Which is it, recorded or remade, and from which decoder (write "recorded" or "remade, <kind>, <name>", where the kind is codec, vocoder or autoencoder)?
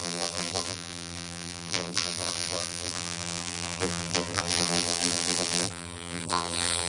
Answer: remade, vocoder, BigVGAN v2